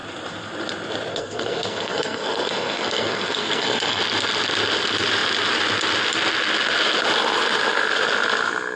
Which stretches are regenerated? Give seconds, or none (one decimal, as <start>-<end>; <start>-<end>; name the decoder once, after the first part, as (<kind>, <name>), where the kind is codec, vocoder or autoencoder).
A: 1.1-4.0 (codec, SNAC)